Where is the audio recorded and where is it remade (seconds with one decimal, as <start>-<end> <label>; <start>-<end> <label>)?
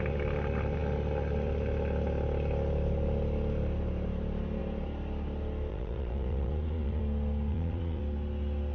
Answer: 0.0-5.7 recorded; 5.7-7.0 remade; 7.0-7.5 recorded; 7.5-8.0 remade; 8.0-8.7 recorded